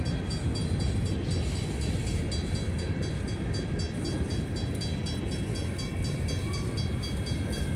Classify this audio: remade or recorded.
recorded